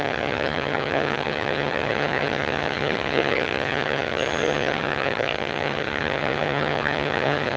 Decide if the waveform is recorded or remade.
remade